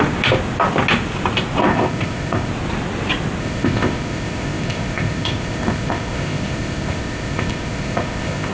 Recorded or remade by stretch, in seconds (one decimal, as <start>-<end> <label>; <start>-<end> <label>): 0.0-1.7 recorded; 1.7-2.5 remade; 2.5-3.4 recorded; 3.4-8.5 remade